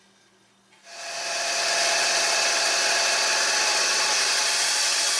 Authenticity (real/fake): real